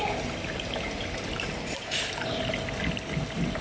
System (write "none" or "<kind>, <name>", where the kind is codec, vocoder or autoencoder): none